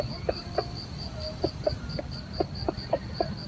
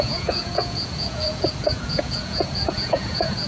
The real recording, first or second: first